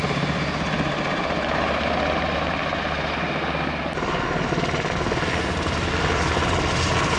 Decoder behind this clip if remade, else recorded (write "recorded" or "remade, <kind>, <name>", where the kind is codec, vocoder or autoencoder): recorded